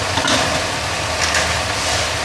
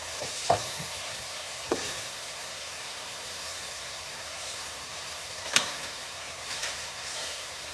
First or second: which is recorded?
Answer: first